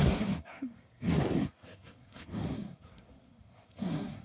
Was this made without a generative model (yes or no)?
no